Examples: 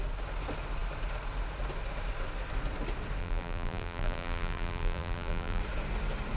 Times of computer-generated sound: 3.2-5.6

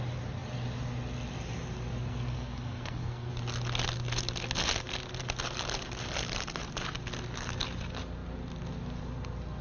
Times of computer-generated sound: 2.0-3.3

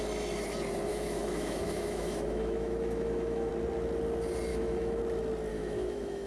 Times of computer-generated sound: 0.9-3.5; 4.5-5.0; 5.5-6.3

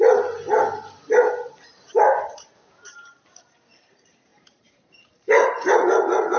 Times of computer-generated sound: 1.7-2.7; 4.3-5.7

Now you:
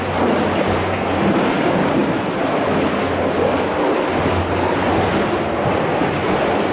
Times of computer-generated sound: none

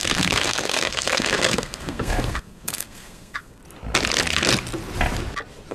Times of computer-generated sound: 0.0-3.6

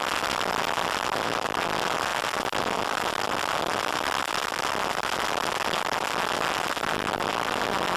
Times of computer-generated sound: none

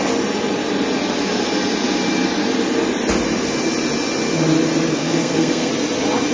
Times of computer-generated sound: 4.9-5.7